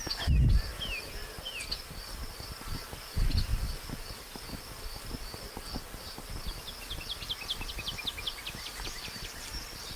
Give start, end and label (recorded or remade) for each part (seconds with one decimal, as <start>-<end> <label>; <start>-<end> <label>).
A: 0.0-1.2 recorded; 1.2-2.1 remade; 2.1-3.5 recorded; 3.5-7.7 remade; 7.7-10.0 recorded